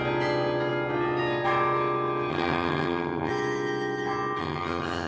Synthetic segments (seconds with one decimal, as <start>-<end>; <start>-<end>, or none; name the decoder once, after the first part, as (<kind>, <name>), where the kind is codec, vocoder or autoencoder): 2.3-3.3 (vocoder, HiFi-GAN); 4.4-5.1